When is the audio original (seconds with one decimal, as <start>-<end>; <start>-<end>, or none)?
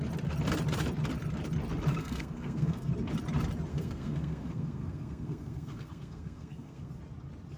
0.0-2.0; 2.9-3.7; 6.9-7.6